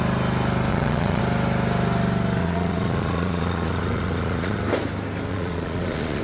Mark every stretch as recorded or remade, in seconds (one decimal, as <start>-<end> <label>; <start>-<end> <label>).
0.0-0.7 recorded; 0.7-1.2 remade; 1.2-2.4 recorded; 2.4-4.6 remade; 4.6-5.3 recorded; 5.3-6.2 remade